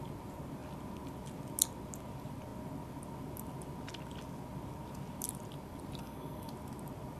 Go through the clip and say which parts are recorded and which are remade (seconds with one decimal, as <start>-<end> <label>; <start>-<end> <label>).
0.0-6.0 recorded; 6.0-6.5 remade; 6.5-7.2 recorded